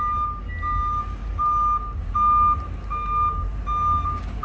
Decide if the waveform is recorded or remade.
recorded